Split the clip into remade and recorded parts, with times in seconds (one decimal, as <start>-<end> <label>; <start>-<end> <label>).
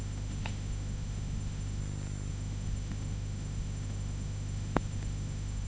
0.0-1.8 remade; 1.8-2.3 recorded; 2.3-5.7 remade